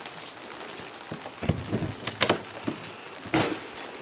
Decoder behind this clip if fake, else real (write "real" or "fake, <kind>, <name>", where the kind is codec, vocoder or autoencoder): real